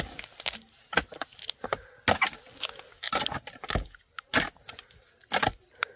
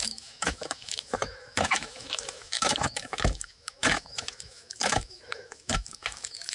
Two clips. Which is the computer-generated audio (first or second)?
second